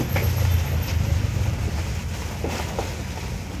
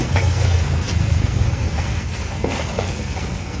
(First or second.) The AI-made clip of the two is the second